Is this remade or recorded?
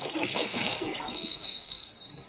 remade